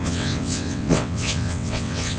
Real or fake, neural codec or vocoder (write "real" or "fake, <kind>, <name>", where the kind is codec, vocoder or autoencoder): fake, vocoder, WaveNeXt